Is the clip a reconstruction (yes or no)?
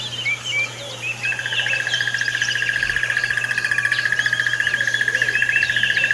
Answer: no